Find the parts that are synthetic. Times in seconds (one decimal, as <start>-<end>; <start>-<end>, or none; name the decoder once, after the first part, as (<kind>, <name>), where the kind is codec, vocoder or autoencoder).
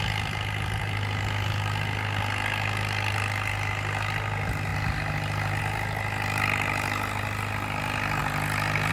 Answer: none